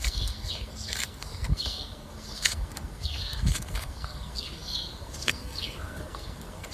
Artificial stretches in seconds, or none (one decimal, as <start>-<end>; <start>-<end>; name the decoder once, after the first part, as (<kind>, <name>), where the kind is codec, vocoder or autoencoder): 0.0-6.7 (codec, SNAC)